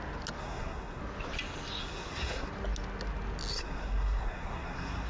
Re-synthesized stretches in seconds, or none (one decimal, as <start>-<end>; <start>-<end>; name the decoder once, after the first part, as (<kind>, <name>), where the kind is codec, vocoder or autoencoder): 0.4-1.0 (codec, SNAC); 1.8-2.5; 3.5-5.1

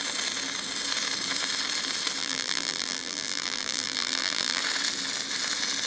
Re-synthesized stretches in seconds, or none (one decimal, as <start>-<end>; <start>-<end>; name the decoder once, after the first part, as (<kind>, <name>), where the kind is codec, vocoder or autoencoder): 2.2-4.6 (vocoder, BigVGAN v2)

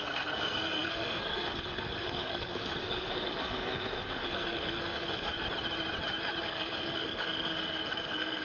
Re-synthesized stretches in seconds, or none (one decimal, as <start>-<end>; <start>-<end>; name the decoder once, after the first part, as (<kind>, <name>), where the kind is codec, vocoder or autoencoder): 0.0-5.3 (codec, SNAC); 6.4-8.4

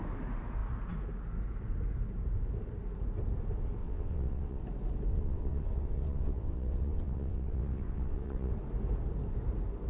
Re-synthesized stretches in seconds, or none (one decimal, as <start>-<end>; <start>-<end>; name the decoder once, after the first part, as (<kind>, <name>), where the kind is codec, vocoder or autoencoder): 3.8-4.6 (vocoder, WaveNeXt); 5.1-8.5

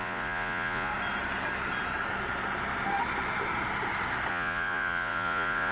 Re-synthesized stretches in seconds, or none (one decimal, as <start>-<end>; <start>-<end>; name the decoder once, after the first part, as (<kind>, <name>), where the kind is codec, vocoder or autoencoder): 0.0-0.9 (vocoder, Vocos); 4.3-5.7